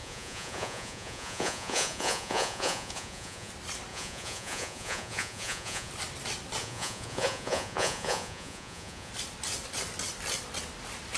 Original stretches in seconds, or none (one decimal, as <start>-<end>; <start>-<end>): 3.5-3.9; 5.9-6.6; 9.1-11.2